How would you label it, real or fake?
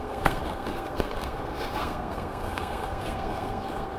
fake